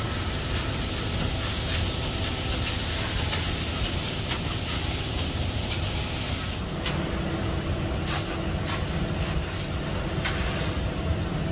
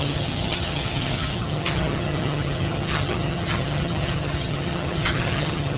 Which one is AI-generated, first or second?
second